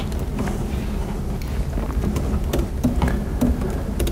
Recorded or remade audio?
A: recorded